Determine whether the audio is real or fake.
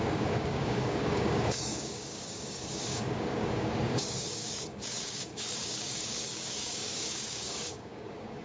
fake